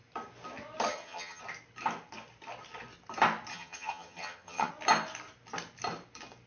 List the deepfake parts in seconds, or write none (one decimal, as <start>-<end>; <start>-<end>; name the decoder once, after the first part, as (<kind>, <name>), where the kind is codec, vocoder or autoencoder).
0.9-1.4 (vocoder, HiFi-GAN); 3.5-4.7